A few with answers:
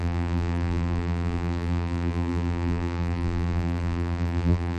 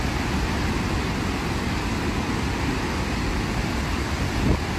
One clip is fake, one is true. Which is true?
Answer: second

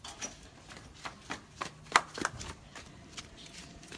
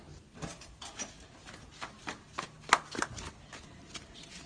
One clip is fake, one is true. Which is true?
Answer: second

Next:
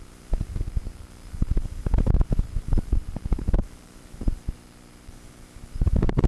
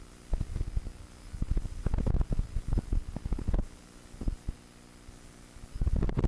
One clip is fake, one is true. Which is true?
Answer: second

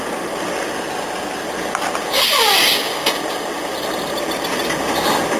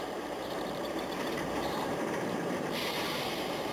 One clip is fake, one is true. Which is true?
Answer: first